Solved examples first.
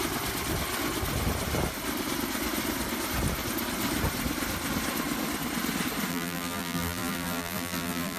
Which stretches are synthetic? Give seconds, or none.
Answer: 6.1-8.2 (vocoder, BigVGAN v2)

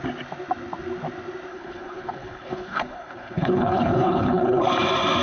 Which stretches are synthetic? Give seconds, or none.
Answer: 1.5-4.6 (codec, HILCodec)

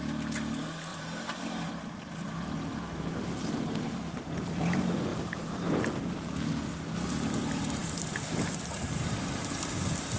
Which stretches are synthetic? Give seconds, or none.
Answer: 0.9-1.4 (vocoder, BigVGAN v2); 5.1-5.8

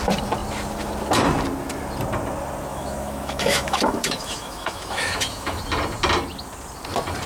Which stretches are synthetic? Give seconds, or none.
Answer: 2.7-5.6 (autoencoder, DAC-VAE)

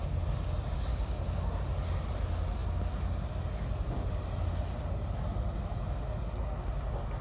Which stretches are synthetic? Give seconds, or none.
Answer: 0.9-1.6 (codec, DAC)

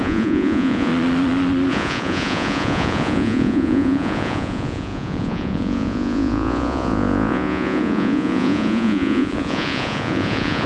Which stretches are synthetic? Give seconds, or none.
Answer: 0.0-0.9 (vocoder, Vocos); 1.7-10.7

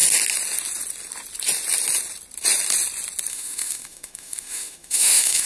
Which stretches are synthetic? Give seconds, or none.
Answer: 3.3-5.5 (autoencoder, DAC-VAE)